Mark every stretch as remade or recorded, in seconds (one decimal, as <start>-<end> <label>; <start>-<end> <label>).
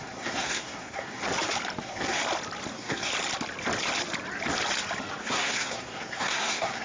0.0-1.2 remade; 1.2-1.8 recorded; 1.8-2.2 remade; 2.2-2.7 recorded; 2.7-3.1 remade; 3.1-5.2 recorded; 5.2-6.8 remade